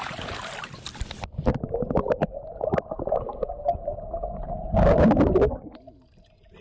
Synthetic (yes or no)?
no